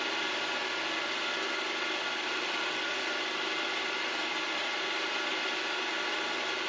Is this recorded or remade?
remade